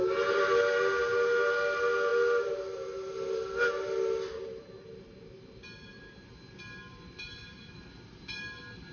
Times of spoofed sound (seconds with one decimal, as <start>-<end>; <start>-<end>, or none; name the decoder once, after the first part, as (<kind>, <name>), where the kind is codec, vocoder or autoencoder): none